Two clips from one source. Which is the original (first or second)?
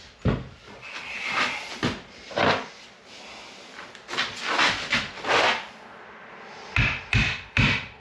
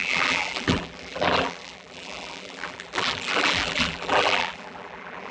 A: first